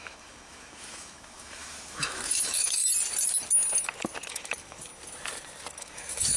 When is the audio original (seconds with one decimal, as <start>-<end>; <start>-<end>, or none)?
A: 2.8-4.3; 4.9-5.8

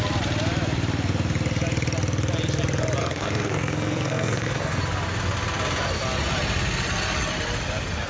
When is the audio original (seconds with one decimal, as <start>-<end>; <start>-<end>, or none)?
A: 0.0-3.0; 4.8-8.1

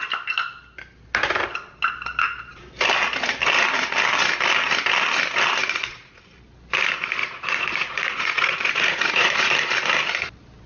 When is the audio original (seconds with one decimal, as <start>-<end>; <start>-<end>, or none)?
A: 0.0-5.6; 6.2-7.2; 9.5-10.7

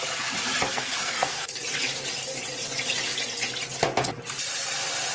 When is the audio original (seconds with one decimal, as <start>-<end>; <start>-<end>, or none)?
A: 0.0-0.7; 1.6-5.1

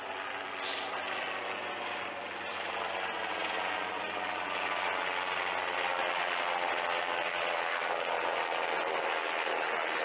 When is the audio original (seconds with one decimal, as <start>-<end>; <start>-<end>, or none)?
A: 0.0-10.0